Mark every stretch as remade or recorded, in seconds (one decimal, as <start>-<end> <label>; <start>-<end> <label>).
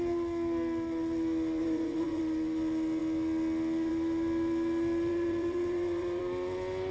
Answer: 0.0-1.6 recorded; 1.6-2.2 remade; 2.2-5.1 recorded; 5.1-6.2 remade; 6.2-6.9 recorded